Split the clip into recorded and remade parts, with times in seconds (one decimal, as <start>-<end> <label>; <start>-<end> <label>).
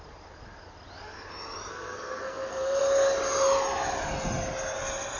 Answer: 0.0-1.7 recorded; 1.7-2.8 remade; 2.8-5.2 recorded